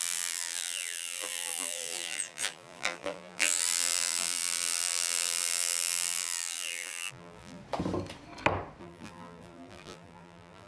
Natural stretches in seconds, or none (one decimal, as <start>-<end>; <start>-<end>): 7.6-8.8